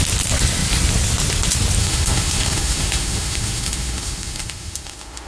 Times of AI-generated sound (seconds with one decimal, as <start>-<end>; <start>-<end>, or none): 1.8-5.3